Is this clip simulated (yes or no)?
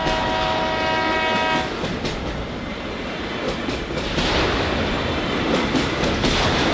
no